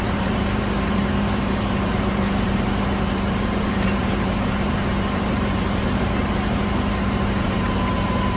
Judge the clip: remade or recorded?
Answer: remade